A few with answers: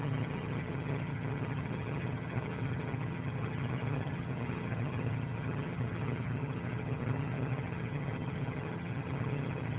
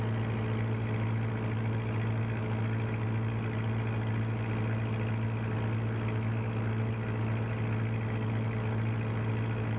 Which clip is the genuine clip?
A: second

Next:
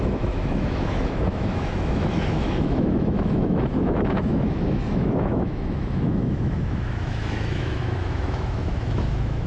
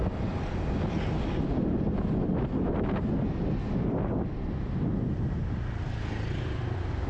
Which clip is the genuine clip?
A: second